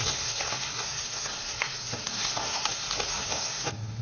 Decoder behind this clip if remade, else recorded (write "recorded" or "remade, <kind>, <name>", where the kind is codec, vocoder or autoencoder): remade, codec, SNAC